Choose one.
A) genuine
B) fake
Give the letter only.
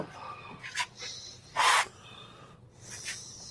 A